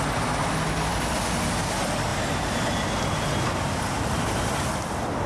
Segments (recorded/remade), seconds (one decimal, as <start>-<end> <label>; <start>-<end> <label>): 0.0-5.3 recorded

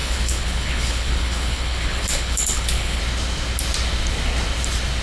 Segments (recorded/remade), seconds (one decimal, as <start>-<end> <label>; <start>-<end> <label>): 0.0-3.0 remade; 3.0-5.0 recorded

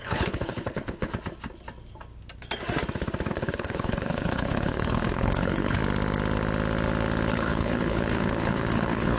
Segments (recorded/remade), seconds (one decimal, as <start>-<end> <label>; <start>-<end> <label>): 0.0-1.1 remade; 1.1-3.3 recorded; 3.3-5.8 remade; 5.8-7.3 recorded; 7.3-9.2 remade

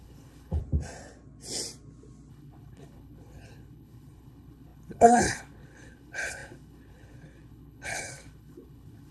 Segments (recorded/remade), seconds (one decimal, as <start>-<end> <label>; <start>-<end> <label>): 0.0-0.6 remade; 0.6-2.3 recorded; 2.3-9.1 remade